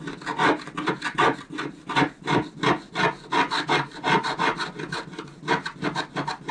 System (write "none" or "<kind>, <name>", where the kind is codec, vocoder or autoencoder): none